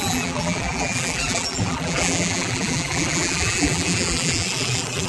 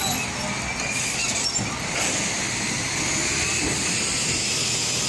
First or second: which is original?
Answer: second